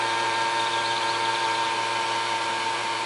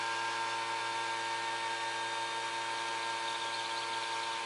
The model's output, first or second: first